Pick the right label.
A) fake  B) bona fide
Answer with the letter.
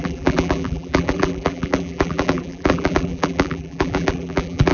A